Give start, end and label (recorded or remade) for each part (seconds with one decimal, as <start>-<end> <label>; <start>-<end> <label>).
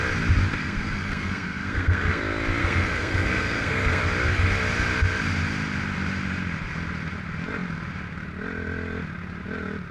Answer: 0.0-0.5 recorded; 0.5-2.2 remade; 2.2-2.6 recorded; 2.6-4.0 remade; 4.0-9.9 recorded